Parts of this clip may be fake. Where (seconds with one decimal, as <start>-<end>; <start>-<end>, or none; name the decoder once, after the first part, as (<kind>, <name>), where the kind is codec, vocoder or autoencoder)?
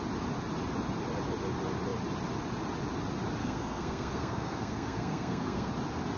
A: 3.4-5.7 (codec, SNAC)